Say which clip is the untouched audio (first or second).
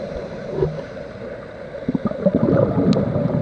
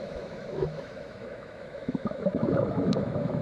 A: first